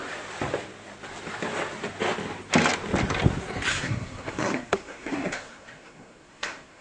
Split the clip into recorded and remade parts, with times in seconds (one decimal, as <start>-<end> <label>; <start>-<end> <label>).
0.0-3.7 recorded; 3.7-6.8 remade